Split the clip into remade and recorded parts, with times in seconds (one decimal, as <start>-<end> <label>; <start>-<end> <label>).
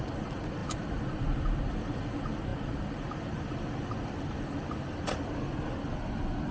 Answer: 0.0-6.5 recorded